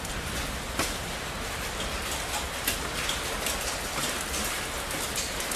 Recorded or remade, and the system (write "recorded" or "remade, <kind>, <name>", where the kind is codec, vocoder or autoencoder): recorded